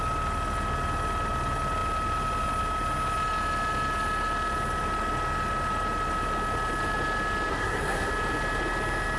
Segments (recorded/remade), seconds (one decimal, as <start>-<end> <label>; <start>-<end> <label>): 0.0-7.5 recorded; 7.5-8.1 remade; 8.1-9.2 recorded